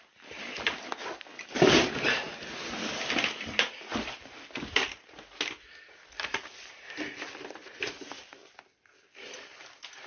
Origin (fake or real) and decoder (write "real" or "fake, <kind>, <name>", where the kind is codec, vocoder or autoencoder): real